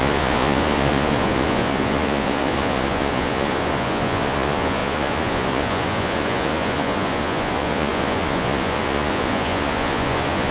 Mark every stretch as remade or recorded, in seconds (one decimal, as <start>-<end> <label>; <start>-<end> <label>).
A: 0.0-10.5 remade